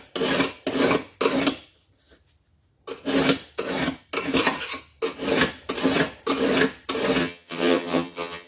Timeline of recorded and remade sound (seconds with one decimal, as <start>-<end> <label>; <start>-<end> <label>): 0.0-7.2 recorded; 7.2-8.5 remade